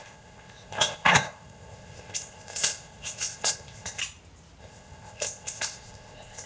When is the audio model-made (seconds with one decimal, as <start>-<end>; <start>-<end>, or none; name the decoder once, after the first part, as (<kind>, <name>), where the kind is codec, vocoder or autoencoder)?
0.0-4.0 (codec, ZipCodec); 4.6-6.5